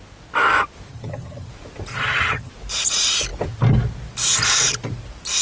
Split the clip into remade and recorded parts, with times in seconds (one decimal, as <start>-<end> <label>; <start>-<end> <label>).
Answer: 0.0-0.9 recorded; 0.9-1.5 remade; 1.5-1.9 recorded; 1.9-2.5 remade; 2.5-5.4 recorded